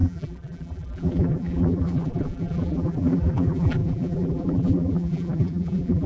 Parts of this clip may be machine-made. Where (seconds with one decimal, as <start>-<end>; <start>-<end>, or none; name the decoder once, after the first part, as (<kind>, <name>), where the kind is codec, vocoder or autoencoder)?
0.0-6.1 (vocoder, BigVGAN v2)